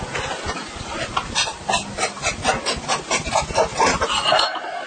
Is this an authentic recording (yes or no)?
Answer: yes